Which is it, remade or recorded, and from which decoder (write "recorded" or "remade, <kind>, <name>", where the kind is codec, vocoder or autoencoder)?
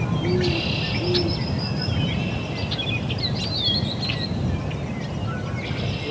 recorded